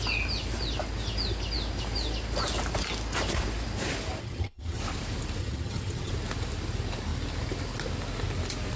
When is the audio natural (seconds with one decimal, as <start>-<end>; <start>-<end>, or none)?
0.0-4.2; 4.8-5.4; 6.1-8.8